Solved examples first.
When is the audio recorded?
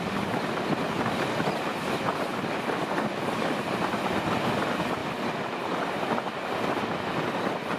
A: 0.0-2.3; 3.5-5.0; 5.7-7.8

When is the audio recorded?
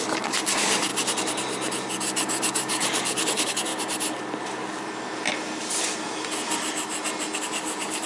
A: 0.9-2.5; 3.7-7.4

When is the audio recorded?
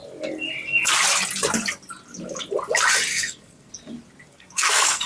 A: 0.0-3.1; 3.7-4.3